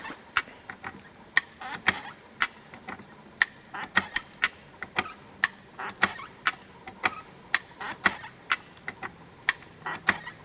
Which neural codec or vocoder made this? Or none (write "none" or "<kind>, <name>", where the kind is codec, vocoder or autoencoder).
none